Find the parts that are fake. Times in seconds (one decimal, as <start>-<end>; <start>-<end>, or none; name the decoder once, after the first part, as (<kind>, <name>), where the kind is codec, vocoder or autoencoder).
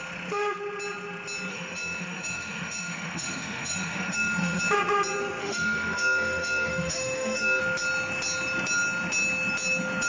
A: 1.5-4.6 (autoencoder, DAC-VAE); 5.4-7.6